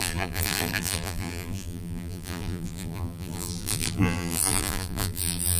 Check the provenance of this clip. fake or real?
fake